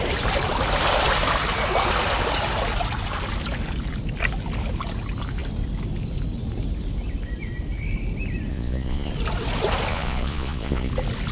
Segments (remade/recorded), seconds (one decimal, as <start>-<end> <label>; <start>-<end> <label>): 0.0-8.5 recorded; 8.5-9.1 remade; 9.1-9.9 recorded; 9.9-10.9 remade; 10.9-11.3 recorded